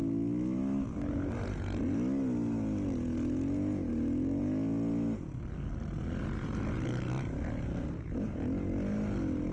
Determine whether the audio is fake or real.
real